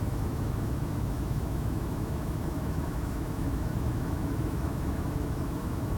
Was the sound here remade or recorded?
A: remade